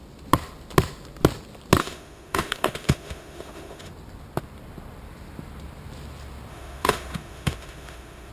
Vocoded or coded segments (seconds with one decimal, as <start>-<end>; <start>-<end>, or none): 1.8-3.9; 6.5-8.3